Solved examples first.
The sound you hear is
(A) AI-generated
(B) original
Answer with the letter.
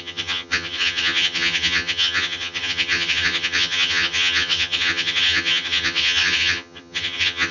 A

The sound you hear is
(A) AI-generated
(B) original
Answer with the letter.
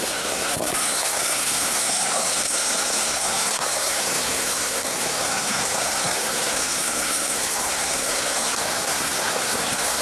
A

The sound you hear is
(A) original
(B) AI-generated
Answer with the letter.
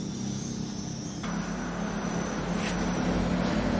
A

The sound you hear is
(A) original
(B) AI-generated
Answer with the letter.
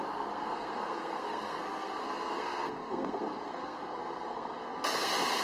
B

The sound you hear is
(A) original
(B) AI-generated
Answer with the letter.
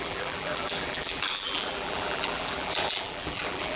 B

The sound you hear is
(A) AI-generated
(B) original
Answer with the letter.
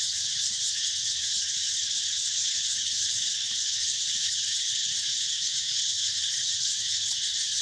A